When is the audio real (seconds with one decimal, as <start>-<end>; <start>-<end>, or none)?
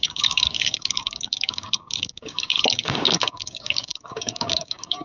none